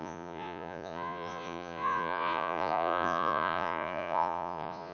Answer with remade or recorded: remade